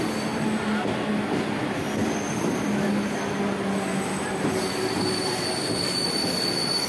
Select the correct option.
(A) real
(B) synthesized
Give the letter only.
A